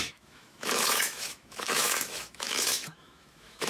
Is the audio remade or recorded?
remade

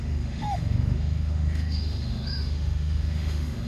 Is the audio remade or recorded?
remade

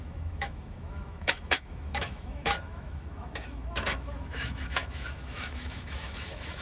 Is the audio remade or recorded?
remade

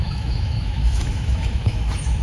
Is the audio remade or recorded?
remade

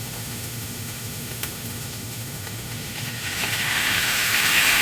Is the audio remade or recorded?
remade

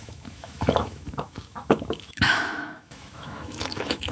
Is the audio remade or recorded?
remade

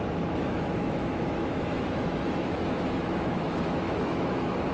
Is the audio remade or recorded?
remade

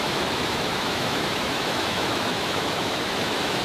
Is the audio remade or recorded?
remade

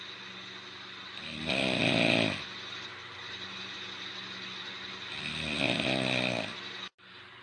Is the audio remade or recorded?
recorded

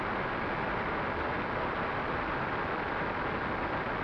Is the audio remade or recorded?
recorded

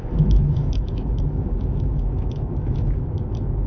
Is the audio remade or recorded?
remade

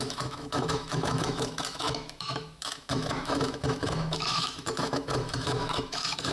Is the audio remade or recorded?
remade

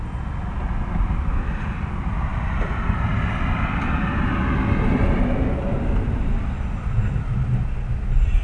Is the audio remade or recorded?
recorded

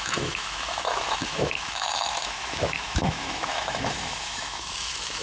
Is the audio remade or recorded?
remade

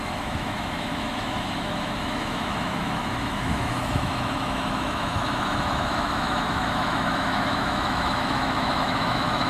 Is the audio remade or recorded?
remade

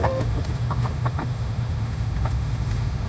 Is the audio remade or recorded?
remade